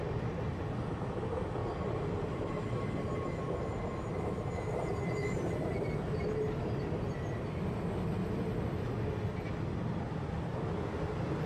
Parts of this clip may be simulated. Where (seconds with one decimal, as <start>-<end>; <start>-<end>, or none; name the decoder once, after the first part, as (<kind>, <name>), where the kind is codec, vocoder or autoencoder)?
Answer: 1.6-6.2 (vocoder, BigVGAN v2)